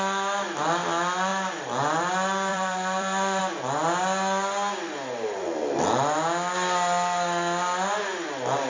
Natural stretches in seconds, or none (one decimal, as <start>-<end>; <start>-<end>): 0.0-2.5; 3.4-8.7